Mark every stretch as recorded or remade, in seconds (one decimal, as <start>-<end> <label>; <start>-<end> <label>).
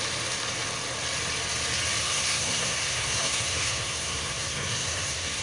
0.0-2.0 recorded; 2.0-5.4 remade